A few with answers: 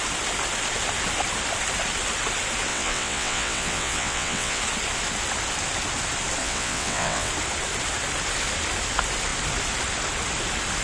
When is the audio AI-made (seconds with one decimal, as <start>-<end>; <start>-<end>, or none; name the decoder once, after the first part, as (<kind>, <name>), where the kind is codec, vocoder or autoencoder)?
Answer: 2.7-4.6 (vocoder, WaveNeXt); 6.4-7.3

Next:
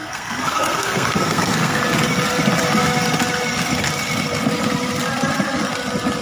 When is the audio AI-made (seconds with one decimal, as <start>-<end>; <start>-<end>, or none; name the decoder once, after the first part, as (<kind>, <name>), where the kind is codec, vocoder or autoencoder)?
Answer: 0.0-1.8 (codec, SNAC)

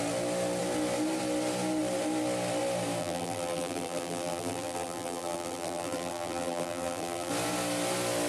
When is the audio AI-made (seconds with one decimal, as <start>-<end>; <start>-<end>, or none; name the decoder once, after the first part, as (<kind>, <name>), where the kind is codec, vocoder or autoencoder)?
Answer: 3.0-7.3 (vocoder, BigVGAN v2)